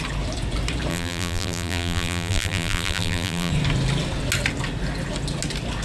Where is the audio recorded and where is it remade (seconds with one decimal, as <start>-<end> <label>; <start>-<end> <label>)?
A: 0.0-0.9 recorded; 0.9-3.5 remade; 3.5-5.8 recorded

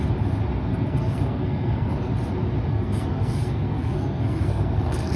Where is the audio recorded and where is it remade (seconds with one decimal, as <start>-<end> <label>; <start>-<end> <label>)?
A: 0.0-0.7 recorded; 0.7-2.1 remade; 2.1-2.7 recorded; 2.7-5.2 remade

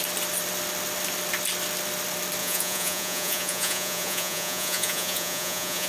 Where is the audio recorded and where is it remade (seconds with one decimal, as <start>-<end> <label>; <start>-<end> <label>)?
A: 0.0-2.4 recorded; 2.4-5.9 remade